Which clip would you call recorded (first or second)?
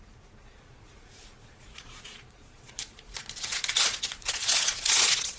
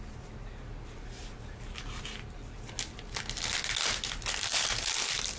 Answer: second